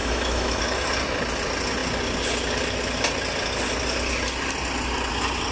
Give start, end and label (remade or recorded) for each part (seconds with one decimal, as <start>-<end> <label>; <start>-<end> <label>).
0.0-0.6 remade; 0.6-5.5 recorded